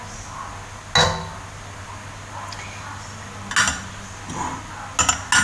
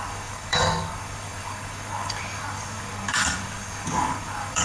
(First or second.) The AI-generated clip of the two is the second